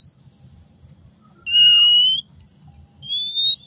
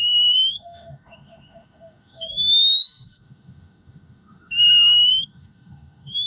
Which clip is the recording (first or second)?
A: first